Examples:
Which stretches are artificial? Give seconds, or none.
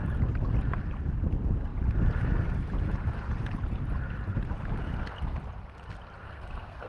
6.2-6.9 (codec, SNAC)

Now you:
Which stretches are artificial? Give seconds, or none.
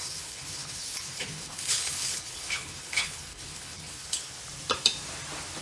0.0-4.4 (codec, HILCodec)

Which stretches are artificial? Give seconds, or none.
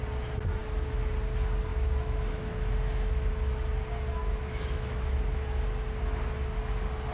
0.6-1.1 (autoencoder, DAC-VAE); 1.7-3.3; 4.2-5.4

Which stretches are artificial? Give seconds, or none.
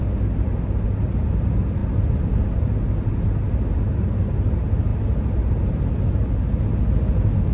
none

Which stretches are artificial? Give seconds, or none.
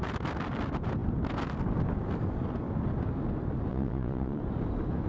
3.7-4.4 (vocoder, Vocos)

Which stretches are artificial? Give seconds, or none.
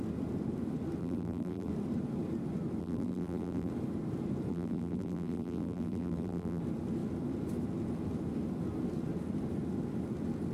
1.0-1.7 (vocoder, BigVGAN v2); 2.8-3.7; 4.5-6.6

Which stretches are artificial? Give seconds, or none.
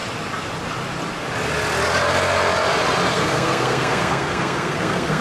3.1-5.2 (codec, SNAC)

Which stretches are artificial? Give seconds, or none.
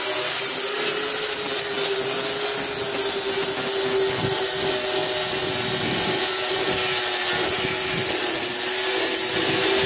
none